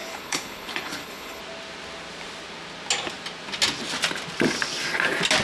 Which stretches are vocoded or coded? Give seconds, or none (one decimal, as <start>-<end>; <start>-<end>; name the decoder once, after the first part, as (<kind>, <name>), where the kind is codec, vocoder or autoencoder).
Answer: 0.0-1.4 (codec, HILCodec)